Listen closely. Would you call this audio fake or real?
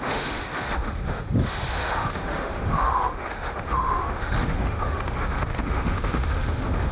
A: fake